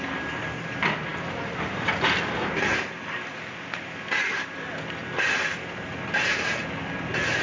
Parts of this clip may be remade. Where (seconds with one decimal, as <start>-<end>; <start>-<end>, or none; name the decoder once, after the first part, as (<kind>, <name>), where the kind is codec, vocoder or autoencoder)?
none